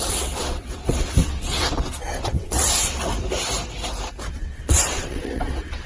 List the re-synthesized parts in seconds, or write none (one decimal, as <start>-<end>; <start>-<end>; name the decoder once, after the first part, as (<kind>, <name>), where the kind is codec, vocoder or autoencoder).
0.0-3.1 (vocoder, WaveNeXt); 4.3-5.9